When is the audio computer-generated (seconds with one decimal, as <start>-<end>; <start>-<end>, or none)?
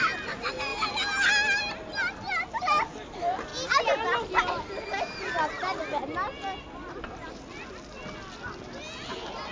none